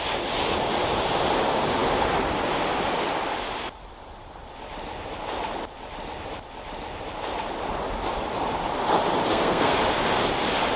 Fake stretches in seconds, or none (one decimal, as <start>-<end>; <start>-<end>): 9.3-9.8